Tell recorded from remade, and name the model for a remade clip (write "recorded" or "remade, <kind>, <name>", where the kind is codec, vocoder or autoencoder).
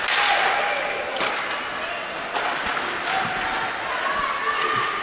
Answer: recorded